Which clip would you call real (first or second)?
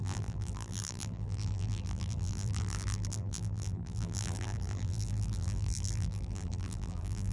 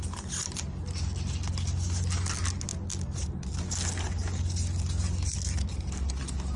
second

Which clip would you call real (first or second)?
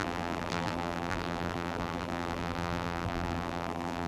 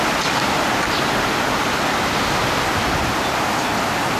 second